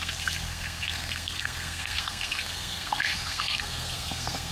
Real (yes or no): no